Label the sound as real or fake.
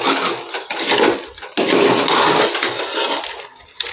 real